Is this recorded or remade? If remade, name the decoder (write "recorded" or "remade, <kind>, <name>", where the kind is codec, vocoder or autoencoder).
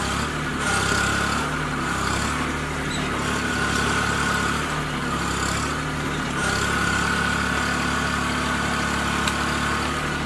recorded